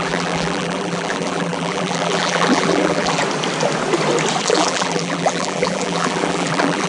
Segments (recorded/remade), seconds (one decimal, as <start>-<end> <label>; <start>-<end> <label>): 0.0-3.2 remade; 3.2-4.4 recorded; 4.4-6.9 remade